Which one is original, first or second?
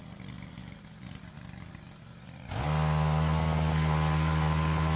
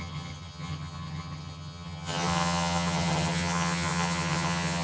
first